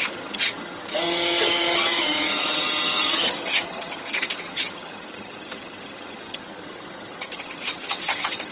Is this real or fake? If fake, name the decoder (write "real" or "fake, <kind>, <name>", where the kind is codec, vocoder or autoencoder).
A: fake, vocoder, HiFi-GAN